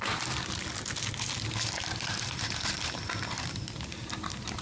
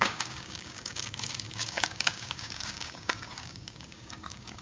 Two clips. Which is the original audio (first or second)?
first